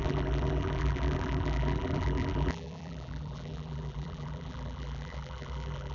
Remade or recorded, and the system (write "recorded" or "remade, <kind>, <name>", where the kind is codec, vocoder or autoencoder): remade, vocoder, BigVGAN v2